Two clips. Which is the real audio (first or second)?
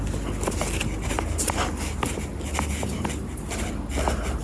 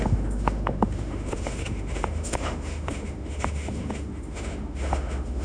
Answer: first